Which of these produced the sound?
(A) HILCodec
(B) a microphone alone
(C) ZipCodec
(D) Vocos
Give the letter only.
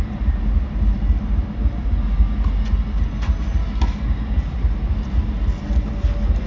B